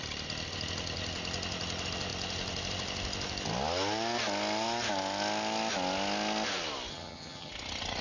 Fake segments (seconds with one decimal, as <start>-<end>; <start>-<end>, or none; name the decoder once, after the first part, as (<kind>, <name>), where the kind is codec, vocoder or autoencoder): 6.9-7.5 (vocoder, HiFi-GAN)